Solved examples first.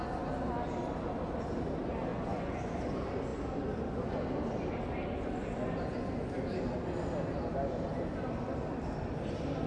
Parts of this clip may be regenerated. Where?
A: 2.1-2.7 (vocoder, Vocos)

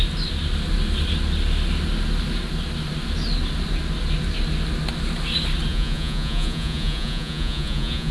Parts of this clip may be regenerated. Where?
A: 5.7-8.1 (vocoder, Vocos)